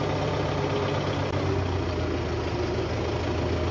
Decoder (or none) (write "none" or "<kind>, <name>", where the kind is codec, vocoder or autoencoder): none